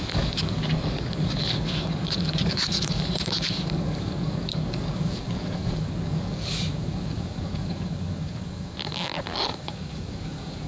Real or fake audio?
fake